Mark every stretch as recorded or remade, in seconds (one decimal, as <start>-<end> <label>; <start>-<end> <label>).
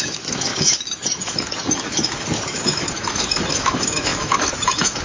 0.0-5.0 remade